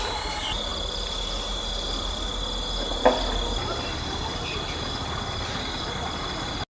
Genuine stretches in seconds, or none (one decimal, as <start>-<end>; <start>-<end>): 0.0-6.8